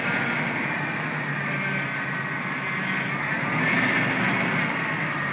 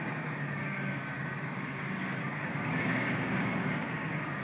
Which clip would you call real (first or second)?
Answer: first